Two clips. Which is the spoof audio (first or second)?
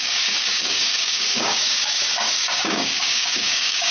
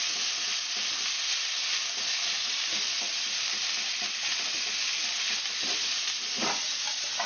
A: first